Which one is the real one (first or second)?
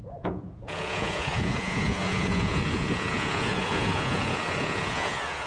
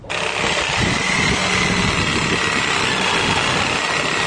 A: second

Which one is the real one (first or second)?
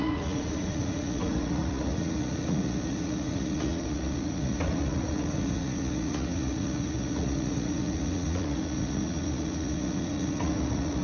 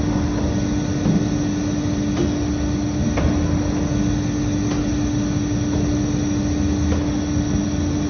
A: second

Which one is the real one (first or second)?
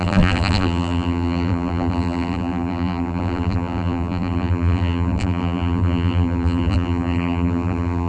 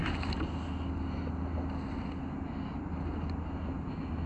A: second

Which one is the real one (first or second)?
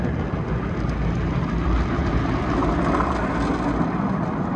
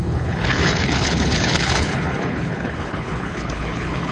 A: first